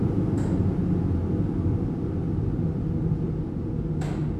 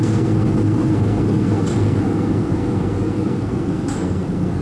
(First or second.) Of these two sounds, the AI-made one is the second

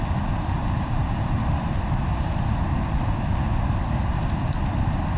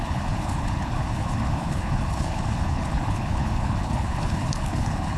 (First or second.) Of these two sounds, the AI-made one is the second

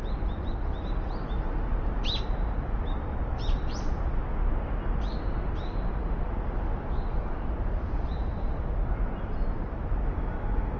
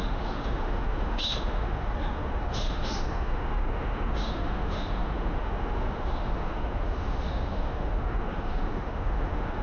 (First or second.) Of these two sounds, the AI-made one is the second